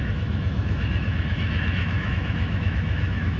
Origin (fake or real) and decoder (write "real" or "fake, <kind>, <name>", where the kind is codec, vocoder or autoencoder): fake, autoencoder, DAC-VAE